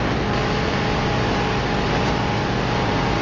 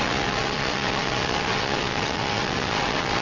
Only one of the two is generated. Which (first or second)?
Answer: second